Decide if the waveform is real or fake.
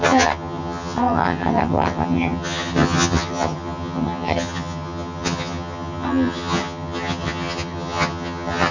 fake